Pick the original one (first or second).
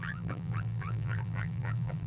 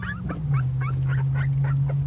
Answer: second